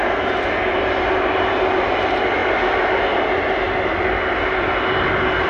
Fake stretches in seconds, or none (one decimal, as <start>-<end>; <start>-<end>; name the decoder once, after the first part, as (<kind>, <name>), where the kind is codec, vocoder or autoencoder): none

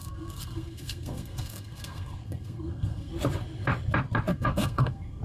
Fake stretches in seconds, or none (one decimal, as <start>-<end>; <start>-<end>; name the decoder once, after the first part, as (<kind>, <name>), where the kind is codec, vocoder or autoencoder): 0.0-3.1 (codec, SNAC); 4.3-5.2